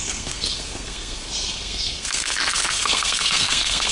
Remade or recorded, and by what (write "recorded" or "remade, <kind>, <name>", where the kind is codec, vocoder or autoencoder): remade, codec, SNAC